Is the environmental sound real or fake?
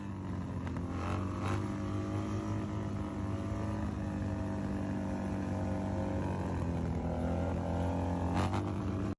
real